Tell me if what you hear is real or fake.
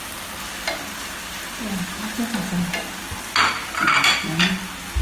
real